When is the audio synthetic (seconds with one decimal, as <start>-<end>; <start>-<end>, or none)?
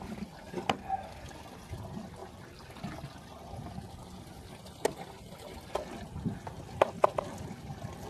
none